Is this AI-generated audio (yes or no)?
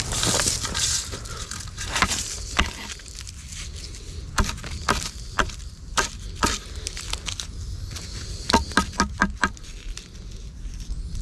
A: no